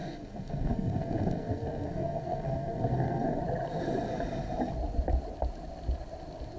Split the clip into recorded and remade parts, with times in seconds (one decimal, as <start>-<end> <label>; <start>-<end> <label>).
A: 0.0-3.4 remade; 3.4-6.6 recorded